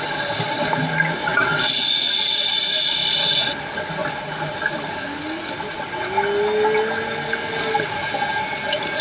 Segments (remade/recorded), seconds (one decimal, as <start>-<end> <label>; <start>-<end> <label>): 0.0-1.2 recorded; 1.2-1.7 remade; 1.7-9.0 recorded